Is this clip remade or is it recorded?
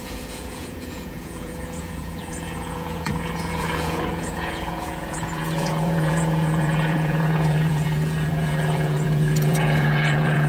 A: remade